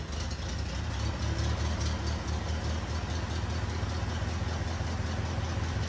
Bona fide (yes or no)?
yes